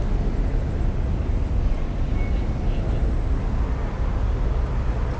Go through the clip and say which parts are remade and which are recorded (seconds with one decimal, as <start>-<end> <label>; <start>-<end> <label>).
0.0-5.2 recorded